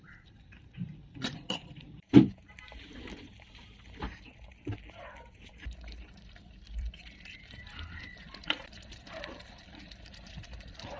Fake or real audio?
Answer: fake